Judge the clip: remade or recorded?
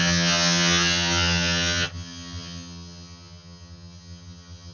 remade